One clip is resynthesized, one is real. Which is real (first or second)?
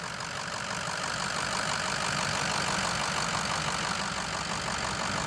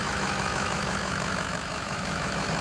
first